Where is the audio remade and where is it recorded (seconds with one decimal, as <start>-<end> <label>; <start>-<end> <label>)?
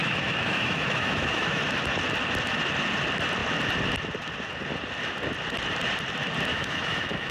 0.0-1.6 remade; 1.6-6.5 recorded; 6.5-7.3 remade